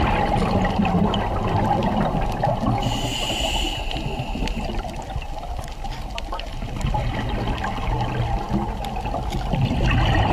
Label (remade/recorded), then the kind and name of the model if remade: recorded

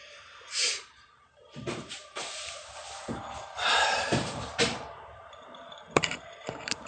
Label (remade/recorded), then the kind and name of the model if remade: remade, vocoder, BigVGAN v2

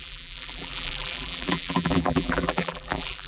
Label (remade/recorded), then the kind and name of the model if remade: remade, vocoder, BigVGAN v2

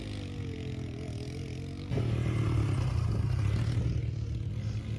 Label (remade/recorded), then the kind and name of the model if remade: recorded